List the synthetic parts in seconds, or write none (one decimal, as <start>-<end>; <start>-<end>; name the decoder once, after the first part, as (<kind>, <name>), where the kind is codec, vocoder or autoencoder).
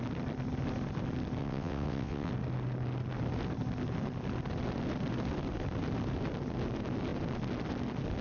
1.4-2.3 (vocoder, WaveNeXt)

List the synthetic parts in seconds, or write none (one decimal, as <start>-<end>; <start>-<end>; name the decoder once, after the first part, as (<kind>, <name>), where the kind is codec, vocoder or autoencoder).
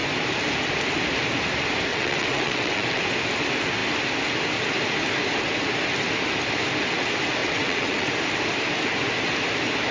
1.9-3.0 (vocoder, WaveNeXt); 7.4-8.1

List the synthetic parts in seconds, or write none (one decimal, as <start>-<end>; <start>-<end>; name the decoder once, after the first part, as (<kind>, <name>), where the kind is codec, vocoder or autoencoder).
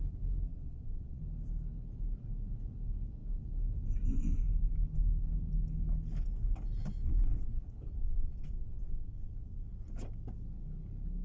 0.5-1.2 (vocoder, WaveNeXt); 7.3-9.9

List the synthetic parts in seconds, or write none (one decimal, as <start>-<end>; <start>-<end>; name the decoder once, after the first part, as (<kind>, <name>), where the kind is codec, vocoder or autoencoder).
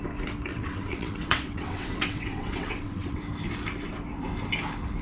0.5-3.2 (vocoder, WaveNeXt)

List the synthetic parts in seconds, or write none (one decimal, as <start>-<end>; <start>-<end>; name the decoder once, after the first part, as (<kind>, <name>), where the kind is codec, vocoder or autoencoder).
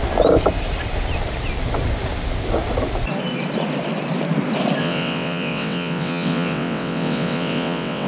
4.8-8.1 (vocoder, WaveNeXt)